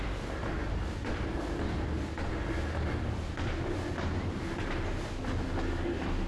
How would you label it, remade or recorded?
recorded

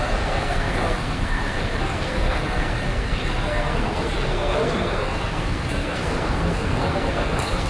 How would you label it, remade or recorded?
remade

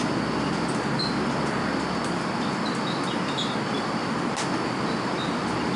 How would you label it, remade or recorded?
recorded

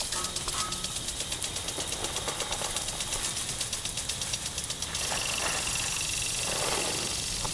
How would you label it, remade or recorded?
recorded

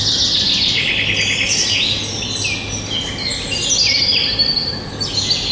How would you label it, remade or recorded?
recorded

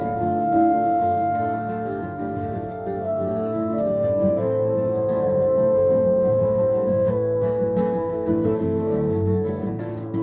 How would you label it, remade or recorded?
remade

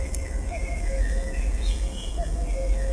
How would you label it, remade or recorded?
remade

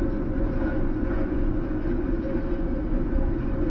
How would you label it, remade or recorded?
remade